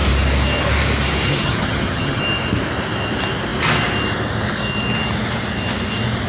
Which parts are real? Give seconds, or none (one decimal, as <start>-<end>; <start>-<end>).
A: 0.0-1.3; 2.2-6.3